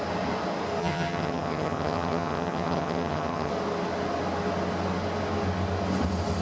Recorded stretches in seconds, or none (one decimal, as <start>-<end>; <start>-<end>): 0.0-0.8; 3.5-6.4